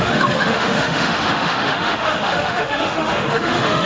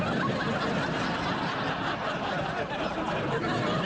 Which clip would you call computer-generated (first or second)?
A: first